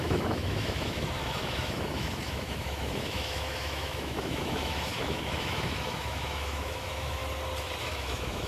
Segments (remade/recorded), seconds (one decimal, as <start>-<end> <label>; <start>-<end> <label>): 0.0-7.2 remade; 7.2-7.8 recorded; 7.8-8.5 remade